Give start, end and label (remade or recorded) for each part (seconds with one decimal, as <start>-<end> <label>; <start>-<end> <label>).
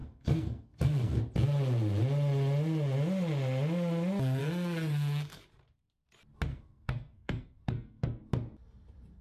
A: 0.0-1.2 remade; 1.2-4.4 recorded; 4.4-5.4 remade; 5.4-6.5 recorded; 6.5-8.2 remade; 8.2-9.2 recorded